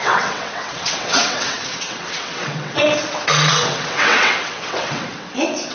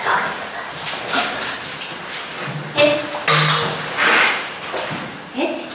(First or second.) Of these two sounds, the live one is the second